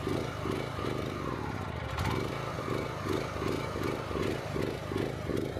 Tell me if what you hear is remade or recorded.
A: recorded